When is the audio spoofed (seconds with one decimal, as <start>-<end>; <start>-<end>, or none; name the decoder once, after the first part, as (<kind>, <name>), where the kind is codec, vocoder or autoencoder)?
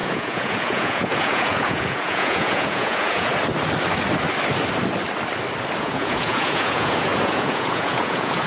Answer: 0.0-3.3 (vocoder, Vocos); 5.8-8.5